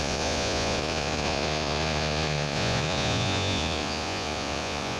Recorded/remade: remade